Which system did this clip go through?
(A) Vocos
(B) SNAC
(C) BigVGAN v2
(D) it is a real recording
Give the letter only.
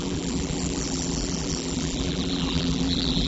C